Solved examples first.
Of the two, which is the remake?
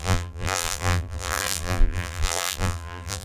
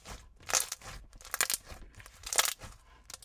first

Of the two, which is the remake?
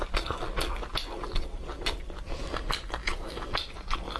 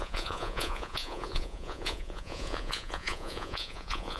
second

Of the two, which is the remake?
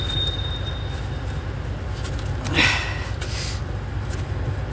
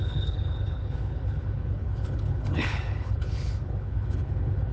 second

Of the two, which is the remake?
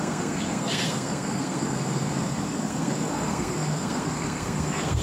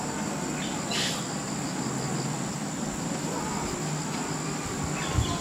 first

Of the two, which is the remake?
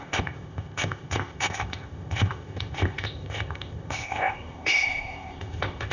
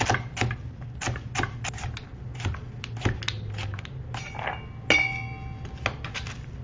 first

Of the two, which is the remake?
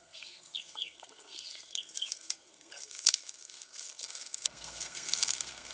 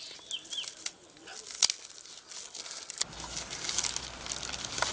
first